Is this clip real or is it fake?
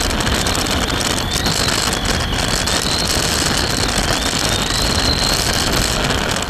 real